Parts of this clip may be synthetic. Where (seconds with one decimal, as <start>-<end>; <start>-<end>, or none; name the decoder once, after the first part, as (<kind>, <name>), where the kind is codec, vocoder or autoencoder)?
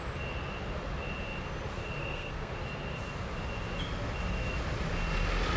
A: 2.0-2.5 (codec, SNAC)